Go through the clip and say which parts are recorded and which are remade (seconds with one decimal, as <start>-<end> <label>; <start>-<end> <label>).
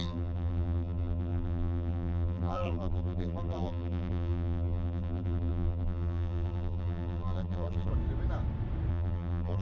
0.0-7.9 remade; 7.9-8.9 recorded; 8.9-9.6 remade